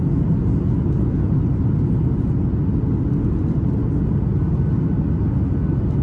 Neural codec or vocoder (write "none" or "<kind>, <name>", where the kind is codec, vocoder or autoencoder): none